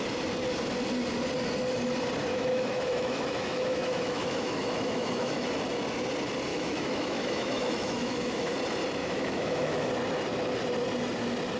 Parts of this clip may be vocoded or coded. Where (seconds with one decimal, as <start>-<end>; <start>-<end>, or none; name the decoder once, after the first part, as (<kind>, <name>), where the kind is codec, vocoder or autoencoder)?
2.3-5.5 (autoencoder, DAC-VAE); 6.5-8.5; 9.0-9.9